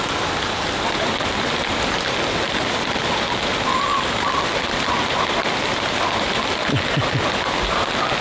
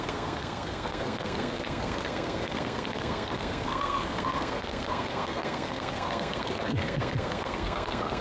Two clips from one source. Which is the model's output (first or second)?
second